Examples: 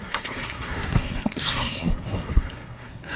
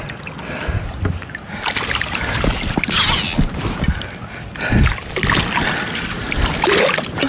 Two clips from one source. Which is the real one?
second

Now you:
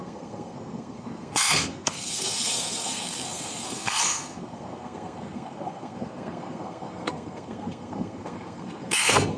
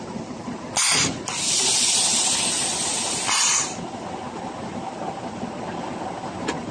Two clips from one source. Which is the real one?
second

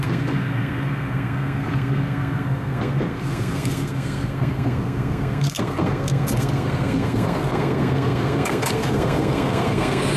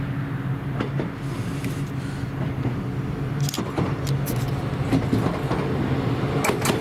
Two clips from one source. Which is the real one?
second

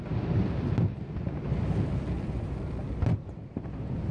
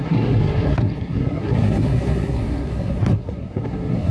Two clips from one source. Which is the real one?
first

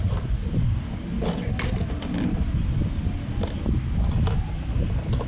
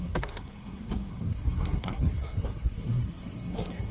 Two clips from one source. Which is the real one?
first